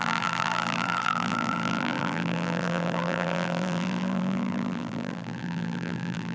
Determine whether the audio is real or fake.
fake